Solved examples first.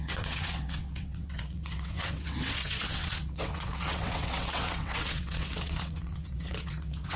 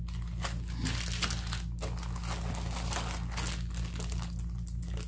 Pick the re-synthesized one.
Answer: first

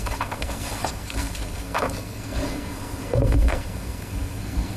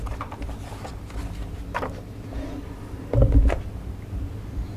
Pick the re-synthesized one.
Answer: first